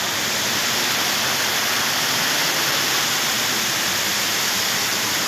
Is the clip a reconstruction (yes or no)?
no